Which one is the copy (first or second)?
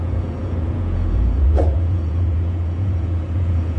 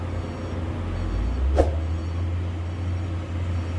first